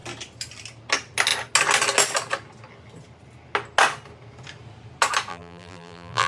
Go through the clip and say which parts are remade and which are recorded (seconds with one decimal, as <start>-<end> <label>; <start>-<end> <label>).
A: 0.0-5.3 recorded; 5.3-6.3 remade